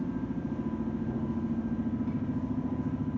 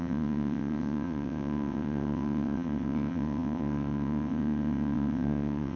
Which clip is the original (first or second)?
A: first